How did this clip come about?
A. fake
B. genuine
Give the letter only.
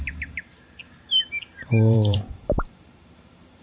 A